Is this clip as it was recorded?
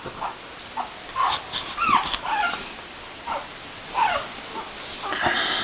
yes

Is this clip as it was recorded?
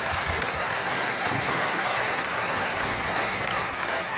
no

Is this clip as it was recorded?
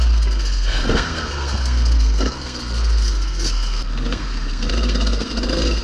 no